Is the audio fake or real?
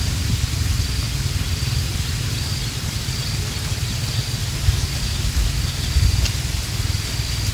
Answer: real